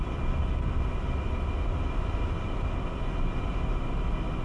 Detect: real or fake real